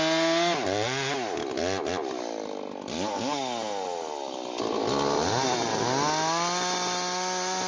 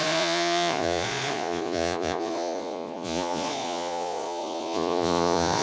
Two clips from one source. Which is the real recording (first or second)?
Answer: first